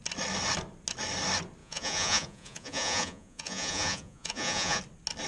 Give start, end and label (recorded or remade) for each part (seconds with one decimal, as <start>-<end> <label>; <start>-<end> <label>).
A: 0.0-1.6 recorded; 1.6-4.8 remade; 4.8-5.3 recorded